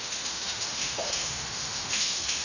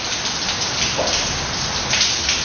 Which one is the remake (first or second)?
first